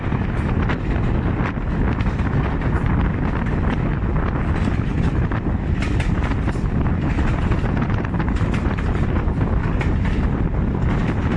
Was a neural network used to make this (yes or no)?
no